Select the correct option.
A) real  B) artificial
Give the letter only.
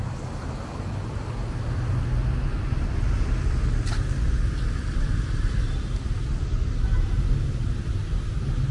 A